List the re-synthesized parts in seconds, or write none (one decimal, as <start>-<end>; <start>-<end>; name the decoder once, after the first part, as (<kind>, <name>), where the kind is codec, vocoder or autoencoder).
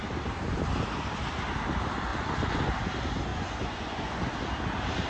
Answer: 2.1-2.6 (vocoder, Vocos); 3.3-4.2